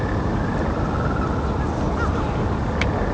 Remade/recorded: recorded